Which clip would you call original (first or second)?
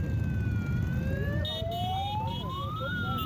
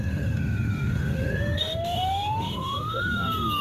first